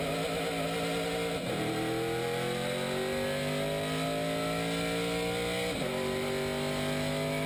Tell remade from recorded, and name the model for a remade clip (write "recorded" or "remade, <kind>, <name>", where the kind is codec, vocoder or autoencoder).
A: recorded